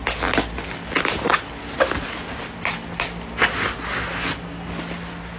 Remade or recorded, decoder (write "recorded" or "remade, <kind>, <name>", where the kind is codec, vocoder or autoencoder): recorded